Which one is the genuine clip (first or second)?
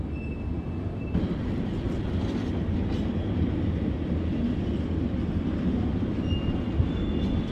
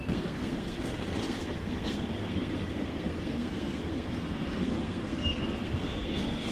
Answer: first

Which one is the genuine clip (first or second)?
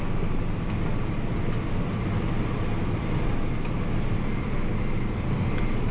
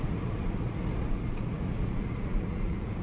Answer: first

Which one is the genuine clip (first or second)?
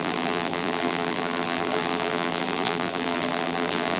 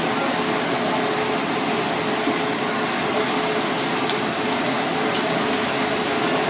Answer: second